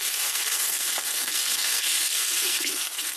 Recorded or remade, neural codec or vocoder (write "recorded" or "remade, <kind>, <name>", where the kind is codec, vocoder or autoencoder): remade, codec, SNAC